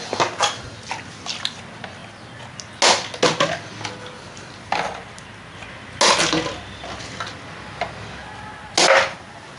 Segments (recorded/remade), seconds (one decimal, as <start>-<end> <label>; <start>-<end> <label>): 0.0-9.6 recorded